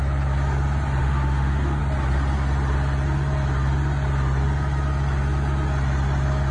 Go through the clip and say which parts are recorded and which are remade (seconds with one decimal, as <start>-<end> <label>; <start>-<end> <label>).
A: 0.0-1.0 recorded; 1.0-1.8 remade; 1.8-6.5 recorded